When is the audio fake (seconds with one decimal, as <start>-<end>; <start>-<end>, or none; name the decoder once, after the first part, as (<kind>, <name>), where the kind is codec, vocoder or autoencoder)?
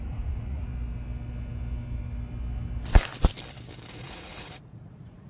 0.0-0.7 (vocoder, Vocos); 3.9-5.3